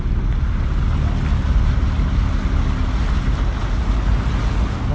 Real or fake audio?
real